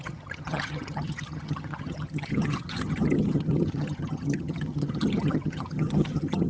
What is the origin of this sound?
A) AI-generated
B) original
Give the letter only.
A